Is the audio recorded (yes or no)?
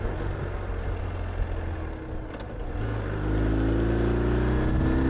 yes